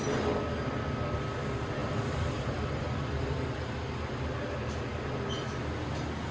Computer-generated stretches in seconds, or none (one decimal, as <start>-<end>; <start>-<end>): 1.8-4.2